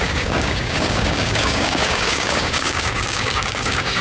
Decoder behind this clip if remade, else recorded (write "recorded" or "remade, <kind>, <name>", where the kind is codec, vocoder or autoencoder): remade, codec, DAC